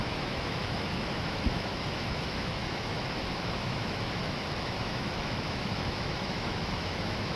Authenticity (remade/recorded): remade